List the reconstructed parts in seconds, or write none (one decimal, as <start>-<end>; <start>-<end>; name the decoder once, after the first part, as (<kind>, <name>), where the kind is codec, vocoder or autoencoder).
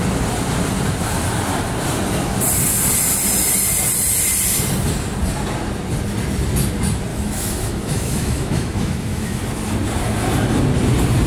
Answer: 7.1-9.4 (autoencoder, DAC-VAE)